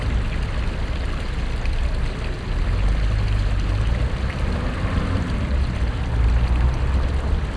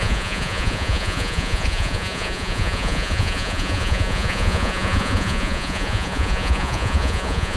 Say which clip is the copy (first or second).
second